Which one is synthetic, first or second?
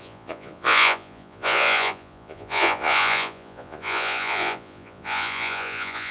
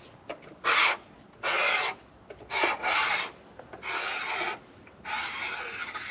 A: first